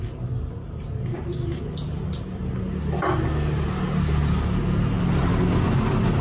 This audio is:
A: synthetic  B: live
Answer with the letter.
B